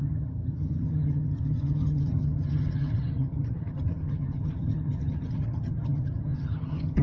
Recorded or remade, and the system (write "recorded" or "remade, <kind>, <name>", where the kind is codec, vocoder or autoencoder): remade, vocoder, HiFi-GAN